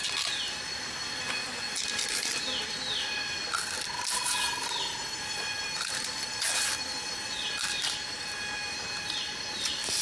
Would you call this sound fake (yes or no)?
no